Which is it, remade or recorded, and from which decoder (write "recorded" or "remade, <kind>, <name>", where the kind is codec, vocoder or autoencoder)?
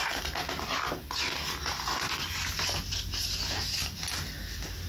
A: recorded